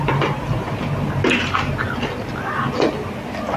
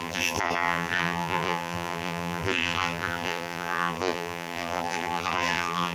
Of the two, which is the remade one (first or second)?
second